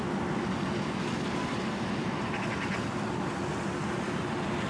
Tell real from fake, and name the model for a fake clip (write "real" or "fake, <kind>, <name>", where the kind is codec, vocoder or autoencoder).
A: real